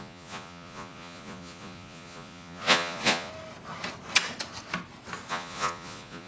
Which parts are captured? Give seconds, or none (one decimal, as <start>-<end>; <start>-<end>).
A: 3.3-5.3